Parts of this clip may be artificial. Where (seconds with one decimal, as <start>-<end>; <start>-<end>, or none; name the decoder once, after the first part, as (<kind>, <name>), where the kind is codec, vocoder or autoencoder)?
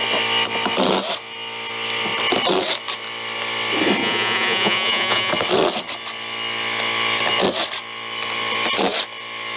4.0-5.3 (vocoder, Vocos)